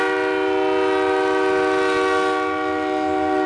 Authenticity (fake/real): real